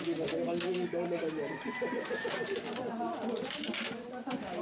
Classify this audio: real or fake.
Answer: real